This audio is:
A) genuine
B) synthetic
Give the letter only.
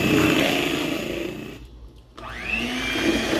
A